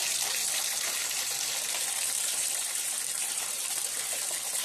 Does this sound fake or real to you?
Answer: fake